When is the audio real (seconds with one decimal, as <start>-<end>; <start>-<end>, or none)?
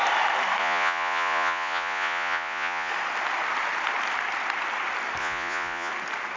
0.0-0.6; 2.9-5.2; 5.9-6.4